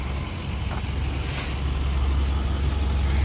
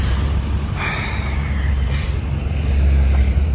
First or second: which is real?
first